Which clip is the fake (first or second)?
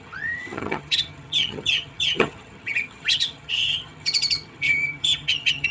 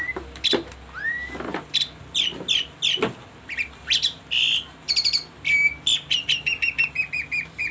first